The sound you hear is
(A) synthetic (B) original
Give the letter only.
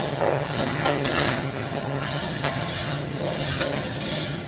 A